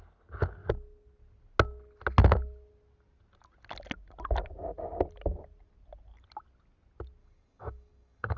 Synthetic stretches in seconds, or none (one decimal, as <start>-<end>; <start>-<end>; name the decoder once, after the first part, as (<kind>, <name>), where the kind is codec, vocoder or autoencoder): 7.2-8.4 (codec, DAC)